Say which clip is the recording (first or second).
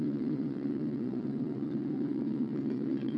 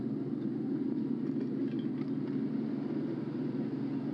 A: second